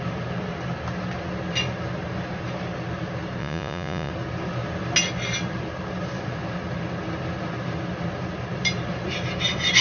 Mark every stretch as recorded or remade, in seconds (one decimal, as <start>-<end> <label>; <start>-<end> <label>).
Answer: 0.0-3.4 recorded; 3.4-4.1 remade; 4.1-9.8 recorded

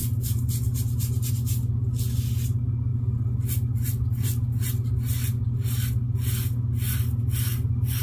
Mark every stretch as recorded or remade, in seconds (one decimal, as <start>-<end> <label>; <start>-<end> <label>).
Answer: 0.0-8.0 recorded